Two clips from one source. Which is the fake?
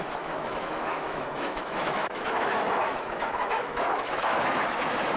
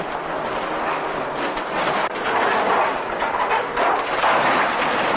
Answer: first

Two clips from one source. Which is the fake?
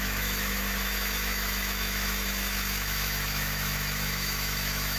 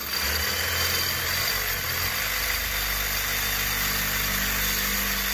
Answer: first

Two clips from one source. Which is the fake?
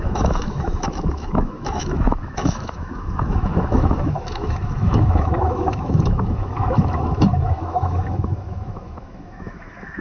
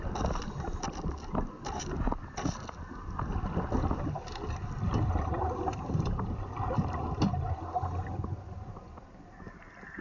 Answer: first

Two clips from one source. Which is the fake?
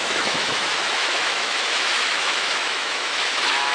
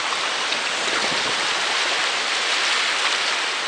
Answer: first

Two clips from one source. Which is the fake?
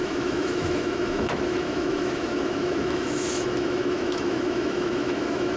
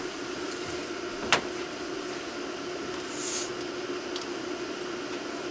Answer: first